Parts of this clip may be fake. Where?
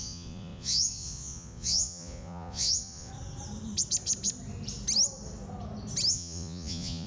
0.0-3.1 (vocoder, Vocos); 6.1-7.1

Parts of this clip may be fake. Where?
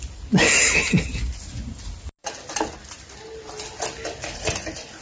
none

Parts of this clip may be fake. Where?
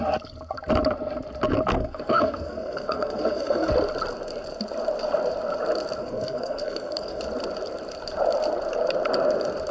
1.7-3.7 (codec, SNAC); 6.0-7.2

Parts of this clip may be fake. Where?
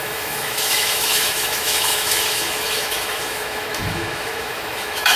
0.0-5.2 (autoencoder, DAC-VAE)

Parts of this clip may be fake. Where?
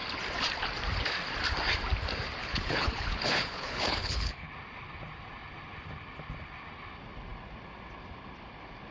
2.4-4.5 (codec, HILCodec)